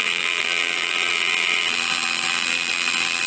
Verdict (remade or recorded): remade